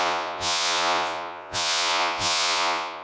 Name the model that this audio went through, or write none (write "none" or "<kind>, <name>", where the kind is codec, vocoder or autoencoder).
vocoder, Vocos